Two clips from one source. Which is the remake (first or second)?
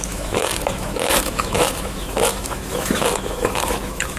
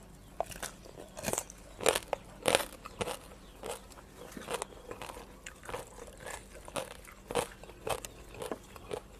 first